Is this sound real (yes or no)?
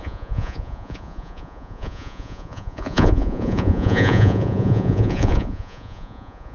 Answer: no